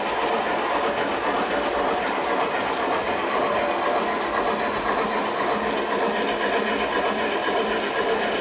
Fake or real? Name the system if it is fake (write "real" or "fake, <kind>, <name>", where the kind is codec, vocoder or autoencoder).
real